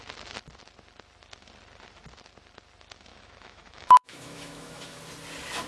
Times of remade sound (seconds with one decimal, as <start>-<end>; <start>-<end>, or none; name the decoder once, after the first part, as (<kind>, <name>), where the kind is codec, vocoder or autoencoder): 3.1-5.0 (autoencoder, DAC-VAE)